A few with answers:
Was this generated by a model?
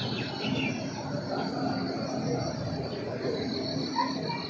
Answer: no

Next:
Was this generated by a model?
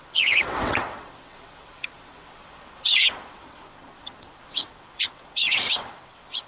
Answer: yes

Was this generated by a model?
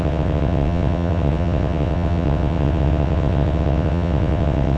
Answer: yes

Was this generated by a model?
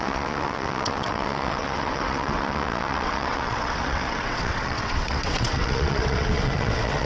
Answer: yes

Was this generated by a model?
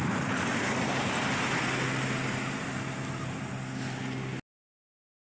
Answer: no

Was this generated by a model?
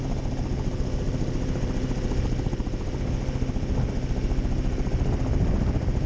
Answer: no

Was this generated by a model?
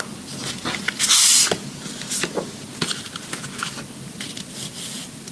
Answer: no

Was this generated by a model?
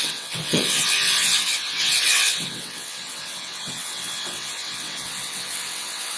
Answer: yes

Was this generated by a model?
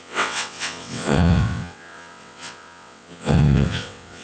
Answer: yes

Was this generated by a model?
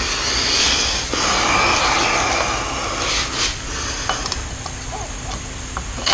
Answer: no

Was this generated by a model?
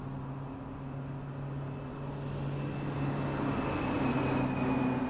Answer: no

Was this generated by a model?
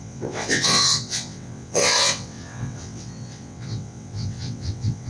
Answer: yes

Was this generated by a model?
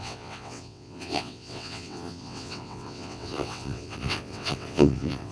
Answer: yes